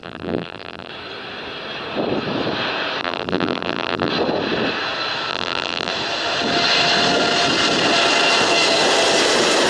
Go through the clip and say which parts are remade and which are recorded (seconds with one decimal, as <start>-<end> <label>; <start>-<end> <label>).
0.0-0.9 remade; 0.9-3.0 recorded; 3.0-4.1 remade; 4.1-5.3 recorded; 5.3-5.9 remade; 5.9-9.7 recorded